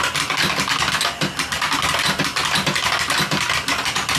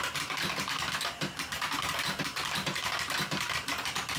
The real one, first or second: first